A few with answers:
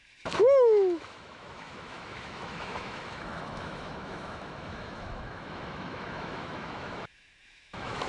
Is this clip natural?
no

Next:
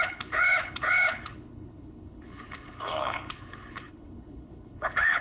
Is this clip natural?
no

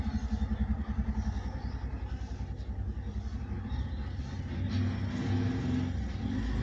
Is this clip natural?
yes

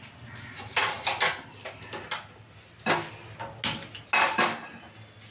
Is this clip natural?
yes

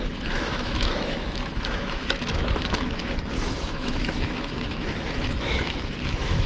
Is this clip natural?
no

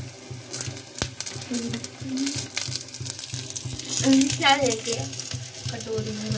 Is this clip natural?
yes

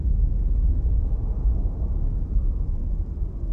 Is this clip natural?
yes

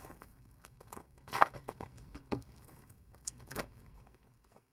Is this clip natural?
no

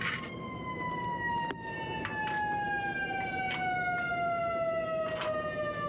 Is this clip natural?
yes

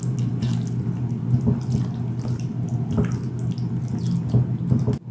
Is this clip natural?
yes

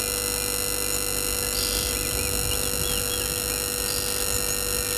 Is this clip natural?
yes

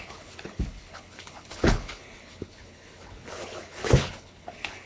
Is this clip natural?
no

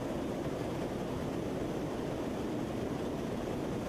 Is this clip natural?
no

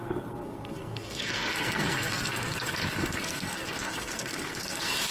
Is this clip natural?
no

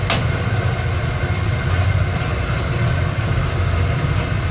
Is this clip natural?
yes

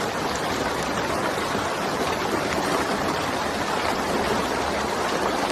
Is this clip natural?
yes